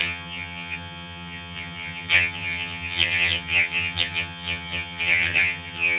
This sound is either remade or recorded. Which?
remade